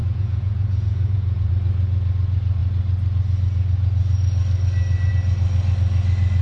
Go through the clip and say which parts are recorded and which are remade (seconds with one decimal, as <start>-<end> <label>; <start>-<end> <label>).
0.0-1.5 remade; 1.5-6.4 recorded